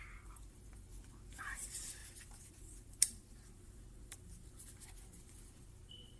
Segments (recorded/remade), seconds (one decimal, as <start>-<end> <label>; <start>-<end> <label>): 0.0-0.9 remade; 0.9-1.4 recorded; 1.4-6.2 remade